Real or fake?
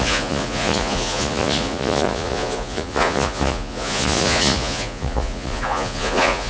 fake